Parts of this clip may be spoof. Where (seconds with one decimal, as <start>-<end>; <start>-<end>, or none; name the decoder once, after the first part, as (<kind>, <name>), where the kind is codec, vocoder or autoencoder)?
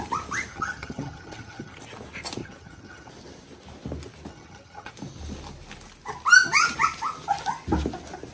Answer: 0.5-1.8 (vocoder, HiFi-GAN); 2.4-3.1; 4.3-4.9